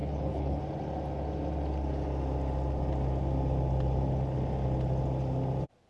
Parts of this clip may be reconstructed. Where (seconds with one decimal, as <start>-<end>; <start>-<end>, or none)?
0.0-0.6